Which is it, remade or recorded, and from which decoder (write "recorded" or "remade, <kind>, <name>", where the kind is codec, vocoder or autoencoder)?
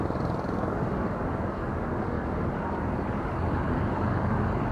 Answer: remade, codec, DAC